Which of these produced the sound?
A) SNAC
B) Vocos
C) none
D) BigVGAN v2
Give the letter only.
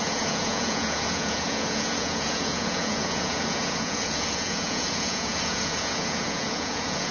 B